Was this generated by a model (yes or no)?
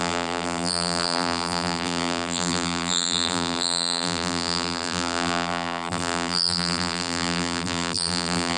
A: yes